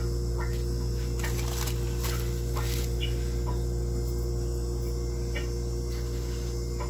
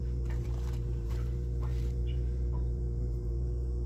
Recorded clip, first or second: first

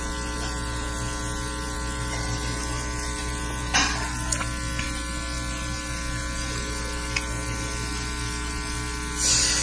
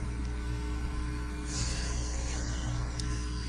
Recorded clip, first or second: first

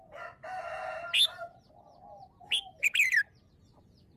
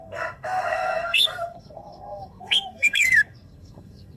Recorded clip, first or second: first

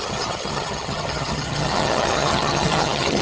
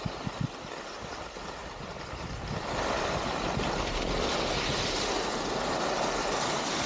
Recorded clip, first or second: second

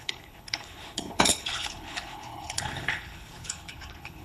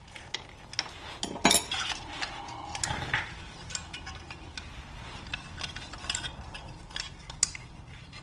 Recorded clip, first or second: second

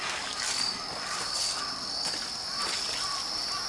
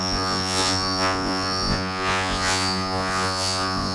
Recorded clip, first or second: first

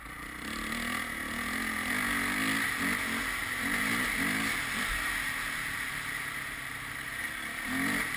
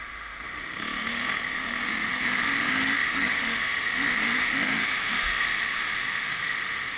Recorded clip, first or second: first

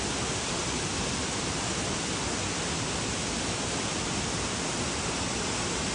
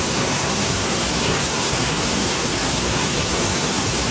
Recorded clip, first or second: first